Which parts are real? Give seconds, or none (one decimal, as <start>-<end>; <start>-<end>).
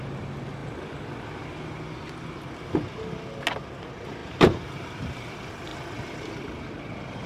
0.0-4.2; 5.3-7.3